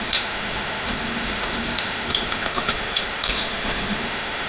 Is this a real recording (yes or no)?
no